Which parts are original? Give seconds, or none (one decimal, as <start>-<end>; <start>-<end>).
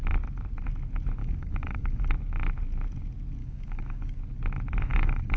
0.0-1.2; 2.1-3.4; 4.2-4.9